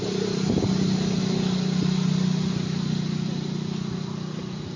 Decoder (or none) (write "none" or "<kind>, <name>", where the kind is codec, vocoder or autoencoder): none